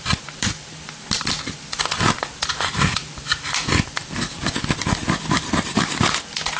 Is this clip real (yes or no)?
no